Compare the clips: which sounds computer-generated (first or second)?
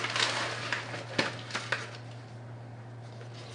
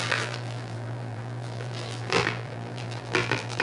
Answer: second